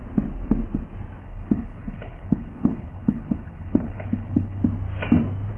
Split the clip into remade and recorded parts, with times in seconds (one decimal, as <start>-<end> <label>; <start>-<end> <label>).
0.0-1.2 recorded; 1.2-4.6 remade; 4.6-5.6 recorded

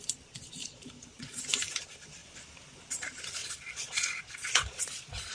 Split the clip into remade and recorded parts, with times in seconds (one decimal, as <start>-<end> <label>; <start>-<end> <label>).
0.0-0.6 recorded; 0.6-1.4 remade; 1.4-3.4 recorded; 3.4-5.3 remade

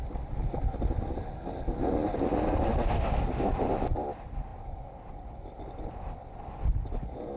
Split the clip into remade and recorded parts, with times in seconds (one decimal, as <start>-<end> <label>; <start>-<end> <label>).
0.0-7.4 recorded